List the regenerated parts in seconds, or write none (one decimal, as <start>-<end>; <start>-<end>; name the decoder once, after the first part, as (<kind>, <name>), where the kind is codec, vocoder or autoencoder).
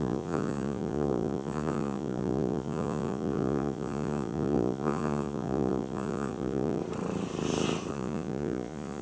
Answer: 0.0-6.8 (vocoder, Vocos); 7.9-9.0